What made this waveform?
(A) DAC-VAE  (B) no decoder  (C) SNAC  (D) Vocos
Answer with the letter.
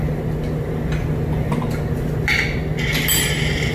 B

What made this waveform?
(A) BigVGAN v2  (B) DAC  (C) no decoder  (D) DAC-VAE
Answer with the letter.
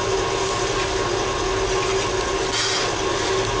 C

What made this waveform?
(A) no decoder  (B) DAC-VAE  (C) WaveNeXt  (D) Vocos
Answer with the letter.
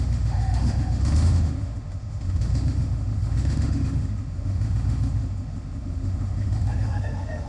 B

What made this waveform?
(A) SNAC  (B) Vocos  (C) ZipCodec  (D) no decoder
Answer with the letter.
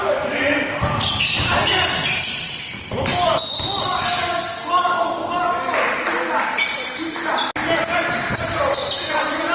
D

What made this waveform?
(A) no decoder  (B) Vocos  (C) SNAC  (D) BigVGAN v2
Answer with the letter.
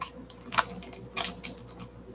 A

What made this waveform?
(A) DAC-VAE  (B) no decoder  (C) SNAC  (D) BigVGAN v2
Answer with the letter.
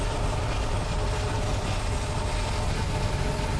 B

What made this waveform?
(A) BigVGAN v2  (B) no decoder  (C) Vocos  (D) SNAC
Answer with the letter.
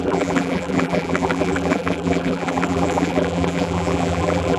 A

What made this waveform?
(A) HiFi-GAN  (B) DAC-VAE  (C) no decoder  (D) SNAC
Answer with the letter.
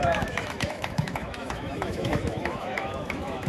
B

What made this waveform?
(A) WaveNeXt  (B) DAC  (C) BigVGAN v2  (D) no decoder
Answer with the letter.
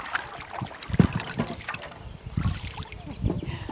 D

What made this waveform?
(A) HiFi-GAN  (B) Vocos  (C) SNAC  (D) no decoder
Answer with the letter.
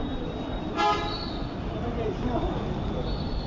D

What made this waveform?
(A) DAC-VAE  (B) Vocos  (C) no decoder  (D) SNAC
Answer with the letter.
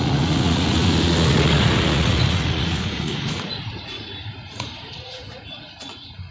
B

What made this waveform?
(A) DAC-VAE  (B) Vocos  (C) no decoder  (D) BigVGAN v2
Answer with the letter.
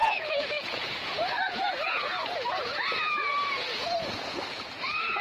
B